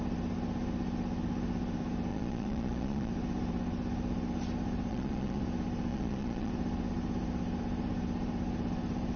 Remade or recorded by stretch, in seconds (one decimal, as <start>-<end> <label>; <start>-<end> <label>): 0.0-2.1 recorded; 2.1-3.1 remade; 3.1-4.9 recorded; 4.9-5.4 remade; 5.4-5.9 recorded; 5.9-6.5 remade; 6.5-9.2 recorded